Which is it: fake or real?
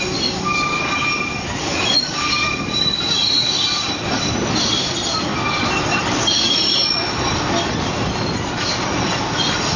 real